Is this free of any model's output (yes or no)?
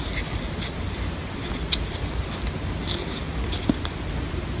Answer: yes